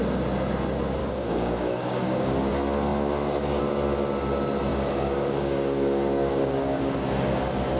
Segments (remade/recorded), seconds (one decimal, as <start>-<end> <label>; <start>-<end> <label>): 0.0-1.0 recorded; 1.0-2.5 remade; 2.5-4.7 recorded; 4.7-6.8 remade; 6.8-7.8 recorded